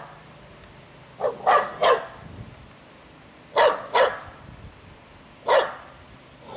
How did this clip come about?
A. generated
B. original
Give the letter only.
B